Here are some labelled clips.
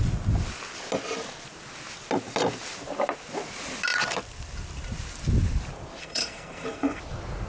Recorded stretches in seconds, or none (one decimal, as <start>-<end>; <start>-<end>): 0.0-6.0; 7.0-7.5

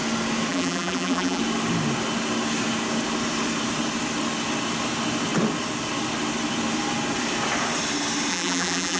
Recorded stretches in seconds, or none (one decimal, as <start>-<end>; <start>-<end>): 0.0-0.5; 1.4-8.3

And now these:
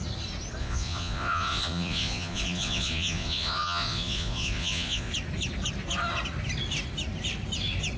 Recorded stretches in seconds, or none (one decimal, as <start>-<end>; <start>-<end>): 0.0-0.6; 5.1-8.0

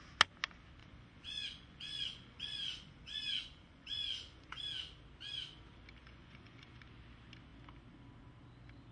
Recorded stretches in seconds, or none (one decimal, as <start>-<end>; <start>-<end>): 0.0-0.8; 4.6-6.0; 6.8-8.9

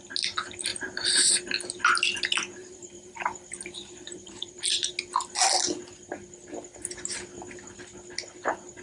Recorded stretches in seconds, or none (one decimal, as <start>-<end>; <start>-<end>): 0.0-0.7; 1.3-2.6; 4.9-8.8

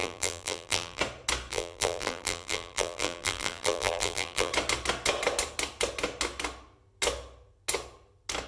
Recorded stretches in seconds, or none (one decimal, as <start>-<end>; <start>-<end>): 1.0-1.5; 4.5-8.5

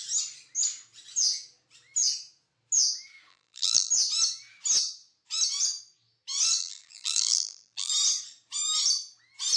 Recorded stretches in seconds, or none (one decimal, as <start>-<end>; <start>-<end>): 0.0-3.3; 3.9-6.6; 7.9-9.6

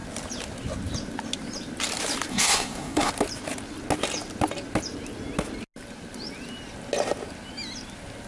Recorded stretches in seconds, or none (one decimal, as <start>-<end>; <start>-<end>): 0.0-2.3; 3.1-8.3